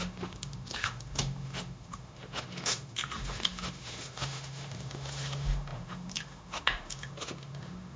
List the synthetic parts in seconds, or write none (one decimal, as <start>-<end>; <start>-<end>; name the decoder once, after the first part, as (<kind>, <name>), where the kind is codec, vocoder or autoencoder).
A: 0.0-8.0 (autoencoder, DAC-VAE)